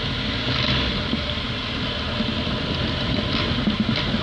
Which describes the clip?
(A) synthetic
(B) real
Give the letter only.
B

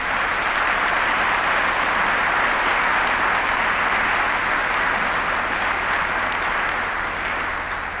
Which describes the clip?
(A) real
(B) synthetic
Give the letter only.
A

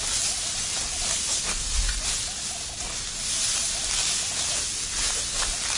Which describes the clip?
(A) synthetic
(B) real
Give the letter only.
B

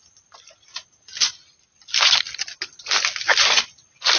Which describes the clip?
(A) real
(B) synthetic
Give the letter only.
A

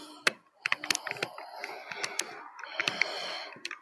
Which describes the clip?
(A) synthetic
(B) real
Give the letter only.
B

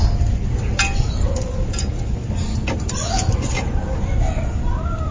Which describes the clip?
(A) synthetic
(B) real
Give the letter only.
B